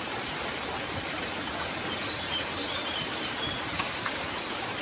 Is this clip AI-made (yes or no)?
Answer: yes